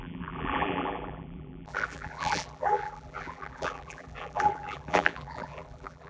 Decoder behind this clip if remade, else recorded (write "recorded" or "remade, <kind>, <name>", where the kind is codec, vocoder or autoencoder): remade, vocoder, BigVGAN v2